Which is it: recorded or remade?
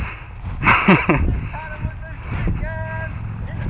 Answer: recorded